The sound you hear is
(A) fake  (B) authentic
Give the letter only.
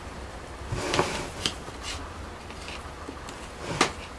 B